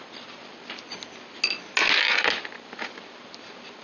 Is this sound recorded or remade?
recorded